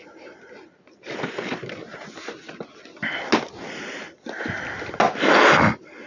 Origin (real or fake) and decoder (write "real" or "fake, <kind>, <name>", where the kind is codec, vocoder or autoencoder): real